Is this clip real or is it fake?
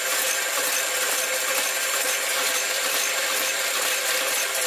real